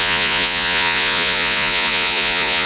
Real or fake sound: fake